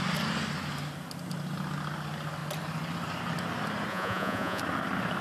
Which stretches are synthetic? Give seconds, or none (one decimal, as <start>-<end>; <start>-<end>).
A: 3.9-4.6